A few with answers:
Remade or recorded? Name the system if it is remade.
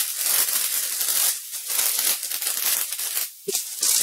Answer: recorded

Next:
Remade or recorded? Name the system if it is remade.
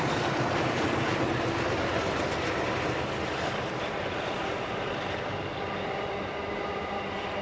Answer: recorded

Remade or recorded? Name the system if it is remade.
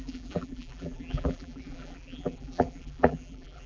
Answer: remade, vocoder, BigVGAN v2